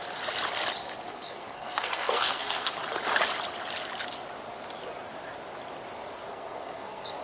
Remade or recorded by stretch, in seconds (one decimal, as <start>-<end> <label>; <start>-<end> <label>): 0.0-1.1 recorded; 1.1-2.7 remade; 2.7-6.3 recorded; 6.3-7.2 remade